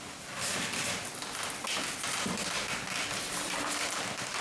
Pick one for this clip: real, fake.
real